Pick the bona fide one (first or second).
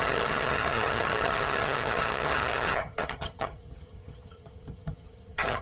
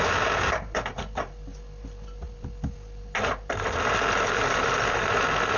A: second